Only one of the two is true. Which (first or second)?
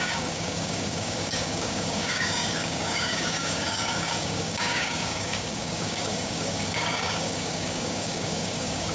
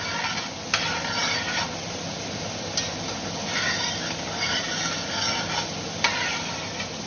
second